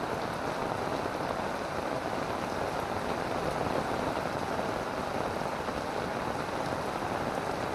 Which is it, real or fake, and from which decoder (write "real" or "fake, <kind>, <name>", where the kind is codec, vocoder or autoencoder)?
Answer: real